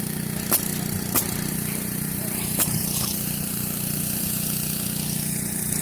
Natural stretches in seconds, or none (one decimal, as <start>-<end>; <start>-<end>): 0.0-0.7; 4.2-5.8